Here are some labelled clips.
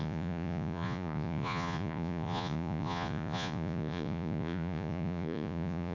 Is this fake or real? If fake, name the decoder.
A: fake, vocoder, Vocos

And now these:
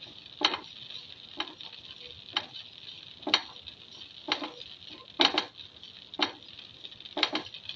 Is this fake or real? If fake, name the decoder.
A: real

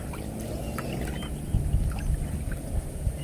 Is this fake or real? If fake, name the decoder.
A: real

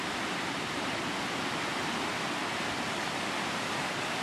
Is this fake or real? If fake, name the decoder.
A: real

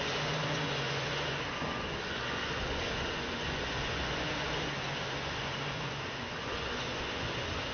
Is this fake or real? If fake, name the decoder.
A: fake, vocoder, Vocos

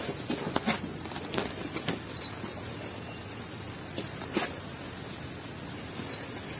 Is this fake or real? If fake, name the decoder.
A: real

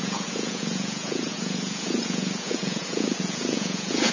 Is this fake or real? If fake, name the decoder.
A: fake, vocoder, Vocos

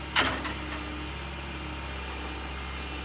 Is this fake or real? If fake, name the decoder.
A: real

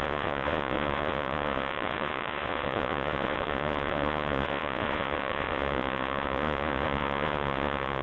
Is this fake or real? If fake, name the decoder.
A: fake, vocoder, Vocos